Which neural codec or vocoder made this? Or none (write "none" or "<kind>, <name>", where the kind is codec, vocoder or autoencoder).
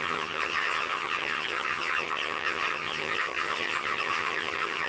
vocoder, HiFi-GAN